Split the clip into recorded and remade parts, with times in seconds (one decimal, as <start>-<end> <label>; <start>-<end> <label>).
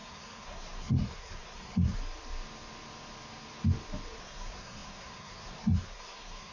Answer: 0.0-2.0 remade; 2.0-4.2 recorded; 4.2-6.5 remade